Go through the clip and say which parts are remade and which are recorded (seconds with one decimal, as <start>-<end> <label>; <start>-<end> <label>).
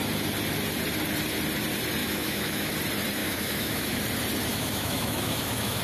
0.0-2.0 recorded; 2.0-2.7 remade; 2.7-3.2 recorded; 3.2-4.0 remade; 4.0-4.5 recorded; 4.5-5.8 remade